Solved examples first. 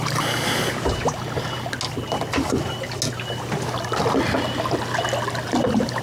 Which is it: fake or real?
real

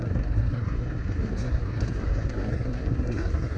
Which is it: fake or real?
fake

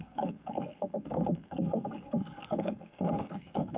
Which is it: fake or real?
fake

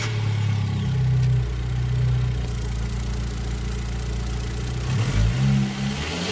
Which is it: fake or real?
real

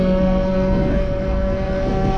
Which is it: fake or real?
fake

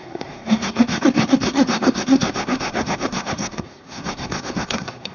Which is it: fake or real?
fake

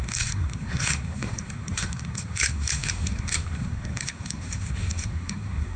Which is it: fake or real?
fake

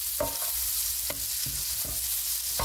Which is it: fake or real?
real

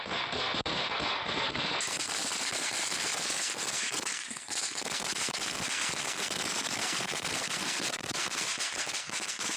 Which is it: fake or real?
fake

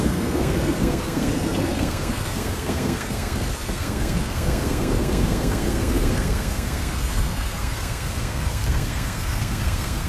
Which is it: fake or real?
fake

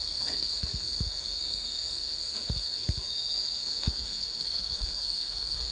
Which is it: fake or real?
fake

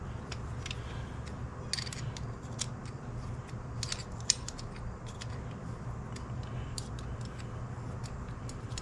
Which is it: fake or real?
real